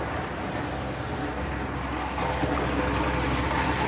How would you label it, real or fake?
real